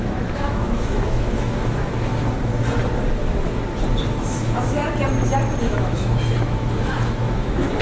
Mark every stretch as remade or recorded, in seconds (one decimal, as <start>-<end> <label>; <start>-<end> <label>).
0.0-2.1 remade; 2.1-4.1 recorded; 4.1-4.8 remade; 4.8-5.6 recorded; 5.6-7.8 remade